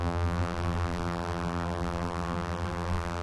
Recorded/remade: remade